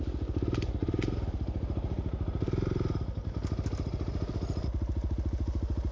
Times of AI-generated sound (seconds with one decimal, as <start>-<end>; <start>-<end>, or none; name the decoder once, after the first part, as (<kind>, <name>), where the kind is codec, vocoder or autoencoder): 0.8-4.3 (vocoder, BigVGAN v2)

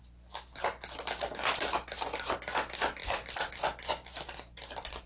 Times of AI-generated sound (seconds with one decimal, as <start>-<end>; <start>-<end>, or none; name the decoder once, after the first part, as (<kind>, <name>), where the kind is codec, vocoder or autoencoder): 3.0-3.9 (vocoder, BigVGAN v2)

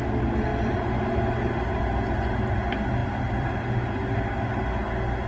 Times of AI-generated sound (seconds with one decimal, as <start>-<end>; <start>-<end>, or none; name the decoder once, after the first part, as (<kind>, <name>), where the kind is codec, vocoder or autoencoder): 3.0-3.5 (vocoder, BigVGAN v2)

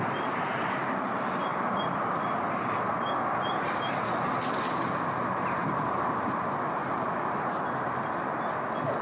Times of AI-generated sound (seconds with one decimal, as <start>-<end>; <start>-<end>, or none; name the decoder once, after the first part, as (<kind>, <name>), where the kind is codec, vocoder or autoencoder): 1.5-2.1 (vocoder, BigVGAN v2); 5.6-6.2; 6.8-8.3